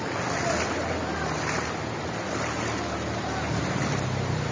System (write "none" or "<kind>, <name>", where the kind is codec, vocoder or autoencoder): none